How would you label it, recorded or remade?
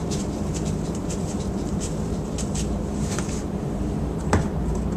remade